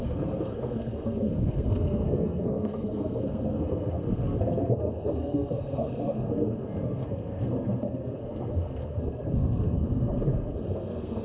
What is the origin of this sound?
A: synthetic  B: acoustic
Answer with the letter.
A